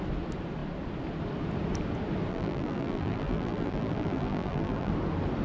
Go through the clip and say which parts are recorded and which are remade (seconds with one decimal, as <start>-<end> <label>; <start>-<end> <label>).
0.0-2.3 recorded; 2.3-4.9 remade; 4.9-5.4 recorded